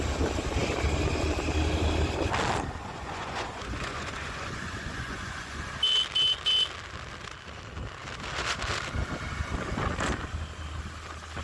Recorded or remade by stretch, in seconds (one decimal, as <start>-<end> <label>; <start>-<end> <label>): 0.0-2.8 recorded; 2.8-5.7 remade; 5.7-11.4 recorded

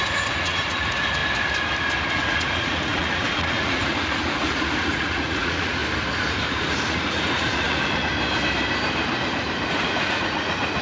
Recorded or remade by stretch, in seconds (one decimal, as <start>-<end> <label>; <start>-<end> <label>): 0.0-1.2 remade; 1.2-2.1 recorded; 2.1-5.8 remade; 5.8-6.4 recorded; 6.4-8.1 remade; 8.1-9.8 recorded; 9.8-10.8 remade

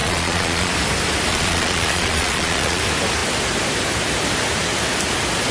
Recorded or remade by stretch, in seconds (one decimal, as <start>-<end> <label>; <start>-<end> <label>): 0.0-0.7 remade; 0.7-1.3 recorded; 1.3-2.8 remade; 2.8-5.5 recorded

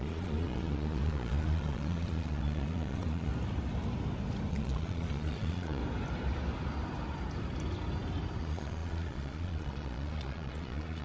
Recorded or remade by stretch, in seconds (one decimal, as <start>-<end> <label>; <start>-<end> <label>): 0.0-3.3 remade; 3.3-4.5 recorded; 4.5-5.8 remade; 5.8-8.4 recorded; 8.4-11.0 remade

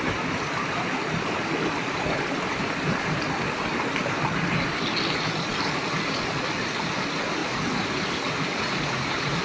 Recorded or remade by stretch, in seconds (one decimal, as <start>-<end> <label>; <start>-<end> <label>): 0.0-7.4 recorded; 7.4-8.1 remade; 8.1-8.5 recorded; 8.5-9.4 remade

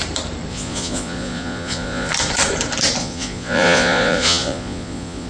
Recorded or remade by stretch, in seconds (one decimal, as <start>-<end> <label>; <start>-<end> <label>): 0.0-0.5 recorded; 0.5-2.1 remade; 2.1-3.0 recorded; 3.0-5.3 remade

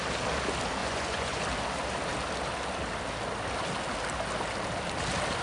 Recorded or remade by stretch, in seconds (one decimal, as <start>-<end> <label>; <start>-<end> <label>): 0.0-0.8 recorded; 0.8-1.4 remade; 1.4-5.4 recorded